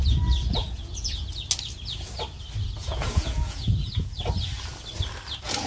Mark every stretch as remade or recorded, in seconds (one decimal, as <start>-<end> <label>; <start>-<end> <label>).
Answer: 0.0-0.6 recorded; 0.6-1.1 remade; 1.1-2.8 recorded; 2.8-4.1 remade; 4.1-5.7 recorded